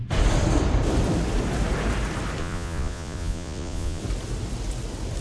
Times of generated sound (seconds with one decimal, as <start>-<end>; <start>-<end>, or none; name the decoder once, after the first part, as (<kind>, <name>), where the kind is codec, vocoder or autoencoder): 2.4-4.0 (vocoder, Vocos)